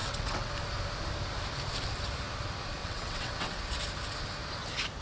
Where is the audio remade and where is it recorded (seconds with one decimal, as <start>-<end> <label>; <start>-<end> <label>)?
0.0-0.5 remade; 0.5-2.8 recorded; 2.8-3.6 remade; 3.6-5.0 recorded